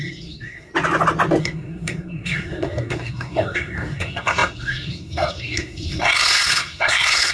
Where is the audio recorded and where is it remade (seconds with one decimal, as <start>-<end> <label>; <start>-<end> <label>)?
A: 0.0-0.7 remade; 0.7-1.4 recorded; 1.4-7.3 remade